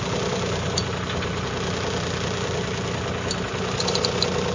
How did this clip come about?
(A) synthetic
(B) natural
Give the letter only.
B